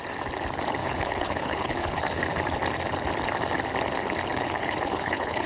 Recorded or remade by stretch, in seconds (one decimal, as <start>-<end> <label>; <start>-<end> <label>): 0.0-0.8 recorded; 0.8-2.2 remade; 2.2-4.3 recorded; 4.3-5.5 remade